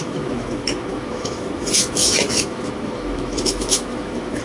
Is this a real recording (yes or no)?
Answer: no